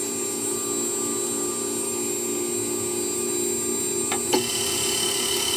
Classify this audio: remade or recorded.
recorded